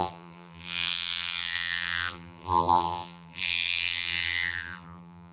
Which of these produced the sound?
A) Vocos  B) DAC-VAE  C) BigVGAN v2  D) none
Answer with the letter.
C